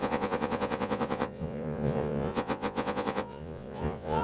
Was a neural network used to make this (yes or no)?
yes